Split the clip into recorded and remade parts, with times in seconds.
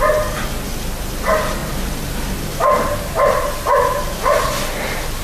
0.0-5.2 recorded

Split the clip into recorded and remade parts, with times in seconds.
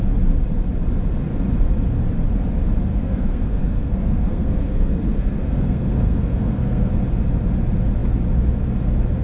0.0-2.9 recorded; 2.9-6.9 remade; 6.9-9.2 recorded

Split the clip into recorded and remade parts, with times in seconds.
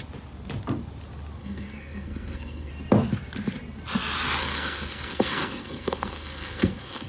0.0-1.4 recorded; 1.4-2.7 remade; 2.7-4.4 recorded; 4.4-7.1 remade